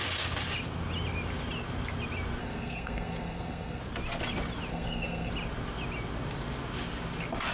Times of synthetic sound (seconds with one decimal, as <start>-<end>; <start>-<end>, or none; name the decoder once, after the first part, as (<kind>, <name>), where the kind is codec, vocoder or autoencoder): 2.4-3.8 (codec, SNAC); 4.7-5.3